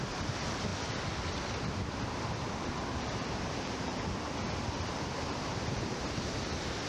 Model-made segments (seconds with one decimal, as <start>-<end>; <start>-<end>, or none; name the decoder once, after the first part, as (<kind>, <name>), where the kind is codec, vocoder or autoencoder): 0.0-0.7 (vocoder, BigVGAN v2); 3.1-3.9; 4.9-6.9